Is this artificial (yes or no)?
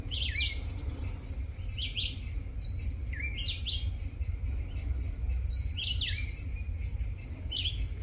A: no